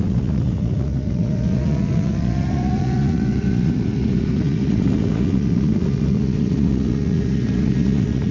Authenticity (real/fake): fake